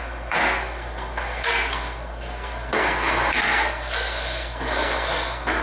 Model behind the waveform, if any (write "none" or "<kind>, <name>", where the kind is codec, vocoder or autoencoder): codec, SNAC